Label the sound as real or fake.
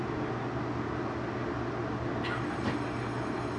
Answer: real